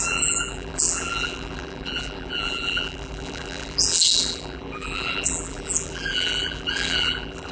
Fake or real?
fake